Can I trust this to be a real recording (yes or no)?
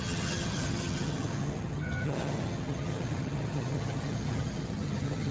no